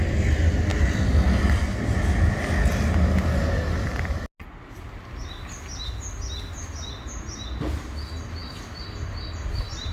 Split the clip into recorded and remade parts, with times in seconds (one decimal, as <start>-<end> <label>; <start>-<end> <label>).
0.0-9.9 recorded